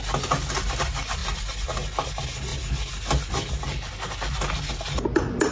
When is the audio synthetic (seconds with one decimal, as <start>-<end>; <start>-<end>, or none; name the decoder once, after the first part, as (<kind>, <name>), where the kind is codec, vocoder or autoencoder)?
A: none